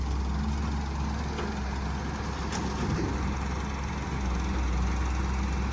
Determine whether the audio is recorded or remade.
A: recorded